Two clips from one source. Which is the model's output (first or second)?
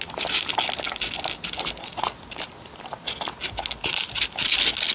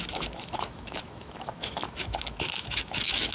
second